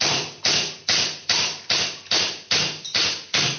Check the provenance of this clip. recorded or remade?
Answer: recorded